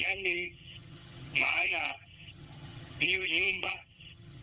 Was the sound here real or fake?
fake